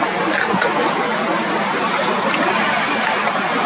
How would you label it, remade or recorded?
recorded